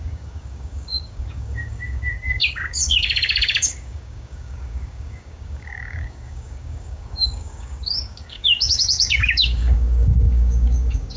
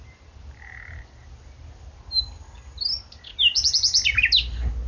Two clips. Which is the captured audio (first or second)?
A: second